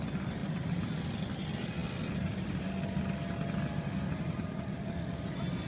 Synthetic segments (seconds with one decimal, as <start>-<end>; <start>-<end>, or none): none